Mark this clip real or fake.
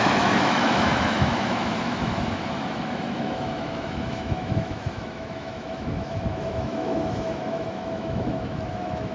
fake